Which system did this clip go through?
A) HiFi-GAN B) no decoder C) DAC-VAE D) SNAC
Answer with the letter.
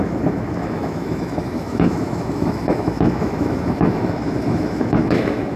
C